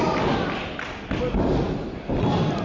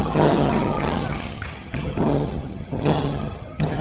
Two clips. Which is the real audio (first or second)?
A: first